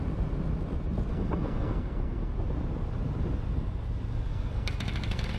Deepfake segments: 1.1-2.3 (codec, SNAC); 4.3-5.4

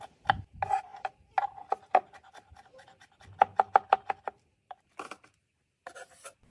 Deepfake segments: none